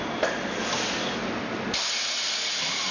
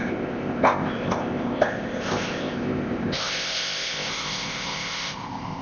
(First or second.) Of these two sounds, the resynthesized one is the second